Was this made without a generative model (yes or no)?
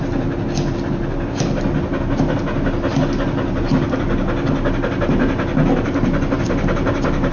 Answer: yes